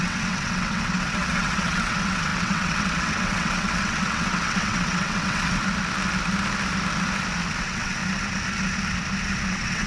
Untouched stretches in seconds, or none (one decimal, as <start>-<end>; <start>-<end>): 5.6-7.6; 8.0-9.5